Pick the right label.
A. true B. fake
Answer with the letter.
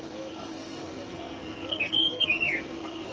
B